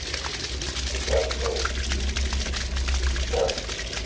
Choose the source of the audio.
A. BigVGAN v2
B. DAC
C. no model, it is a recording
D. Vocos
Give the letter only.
C